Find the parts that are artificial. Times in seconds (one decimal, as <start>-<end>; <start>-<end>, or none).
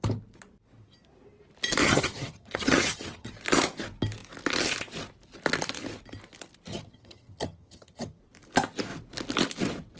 1.8-3.3; 6.7-8.2